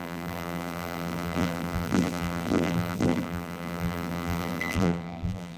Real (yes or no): no